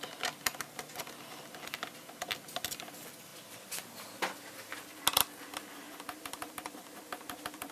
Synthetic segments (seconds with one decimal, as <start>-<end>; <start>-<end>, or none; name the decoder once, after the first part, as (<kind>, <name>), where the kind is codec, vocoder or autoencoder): none